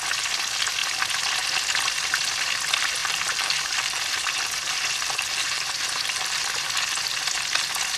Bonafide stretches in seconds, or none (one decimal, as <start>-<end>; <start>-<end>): 0.0-3.0; 6.5-8.0